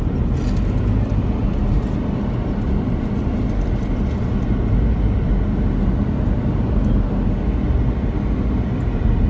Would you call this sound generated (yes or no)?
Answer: no